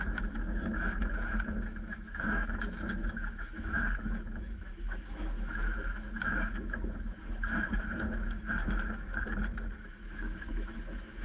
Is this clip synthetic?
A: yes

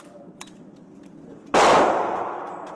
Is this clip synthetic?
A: no